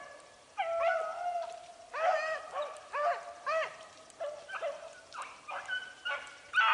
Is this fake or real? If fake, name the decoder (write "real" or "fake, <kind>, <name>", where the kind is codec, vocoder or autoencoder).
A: fake, vocoder, BigVGAN v2